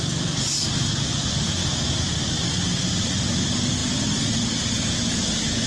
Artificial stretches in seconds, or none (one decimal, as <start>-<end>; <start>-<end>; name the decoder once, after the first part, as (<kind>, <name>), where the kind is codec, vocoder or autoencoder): none